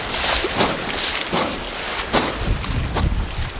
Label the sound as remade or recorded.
recorded